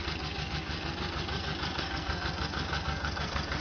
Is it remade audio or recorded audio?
remade